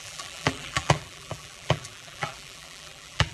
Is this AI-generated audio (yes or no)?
yes